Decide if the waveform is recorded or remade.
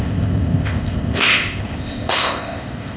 remade